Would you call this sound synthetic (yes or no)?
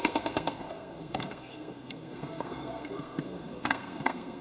yes